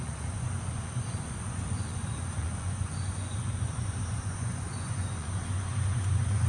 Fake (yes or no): yes